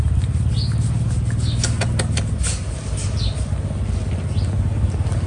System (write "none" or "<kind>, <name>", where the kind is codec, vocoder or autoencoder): none